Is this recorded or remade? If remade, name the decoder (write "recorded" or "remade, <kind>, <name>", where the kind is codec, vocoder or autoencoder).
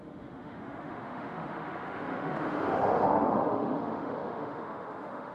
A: remade, autoencoder, DAC-VAE